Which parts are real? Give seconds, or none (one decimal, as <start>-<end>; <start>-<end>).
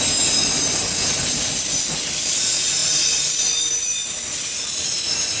0.0-5.4